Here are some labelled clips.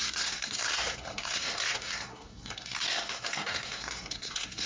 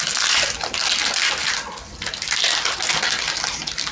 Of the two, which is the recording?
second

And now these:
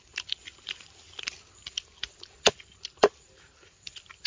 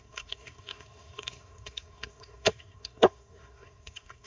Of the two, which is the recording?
first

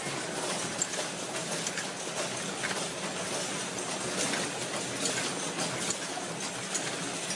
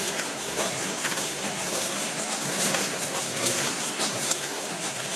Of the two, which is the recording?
first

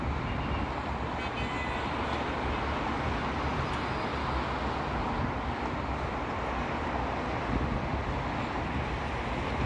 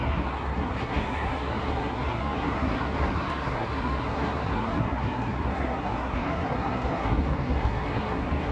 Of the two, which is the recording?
first